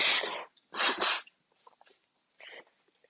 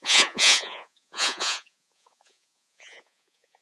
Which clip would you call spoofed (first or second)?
second